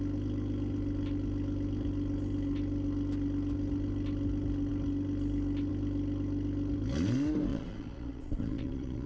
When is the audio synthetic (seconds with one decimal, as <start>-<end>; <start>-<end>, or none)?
7.5-9.1